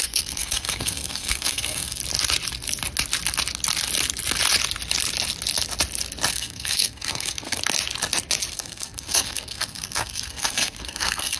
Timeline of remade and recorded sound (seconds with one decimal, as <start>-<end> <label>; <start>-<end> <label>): 0.0-2.0 remade; 2.0-6.3 recorded; 6.3-7.6 remade; 7.6-8.5 recorded; 8.5-11.4 remade